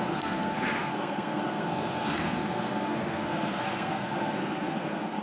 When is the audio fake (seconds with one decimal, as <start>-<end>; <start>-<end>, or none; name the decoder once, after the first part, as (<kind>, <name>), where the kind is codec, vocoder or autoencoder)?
0.0-5.2 (codec, SNAC)